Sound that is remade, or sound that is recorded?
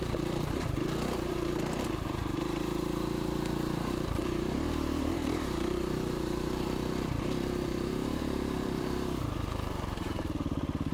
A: remade